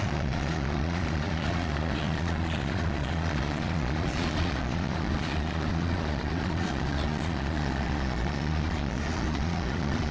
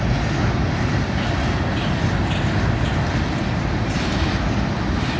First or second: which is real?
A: second